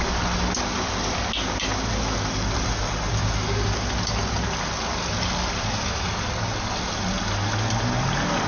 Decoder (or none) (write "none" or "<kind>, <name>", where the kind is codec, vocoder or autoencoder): none